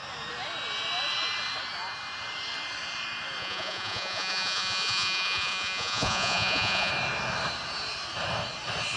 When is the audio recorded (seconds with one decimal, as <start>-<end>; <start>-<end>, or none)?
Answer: 0.0-3.4; 6.9-9.0